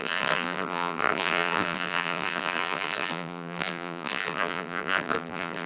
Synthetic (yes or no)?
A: yes